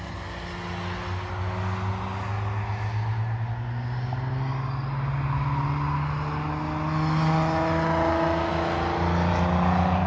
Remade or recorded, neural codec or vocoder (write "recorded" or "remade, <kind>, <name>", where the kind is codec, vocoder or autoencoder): recorded